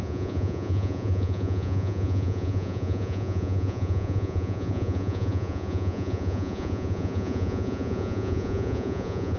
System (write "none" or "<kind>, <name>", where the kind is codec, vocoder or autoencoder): vocoder, Vocos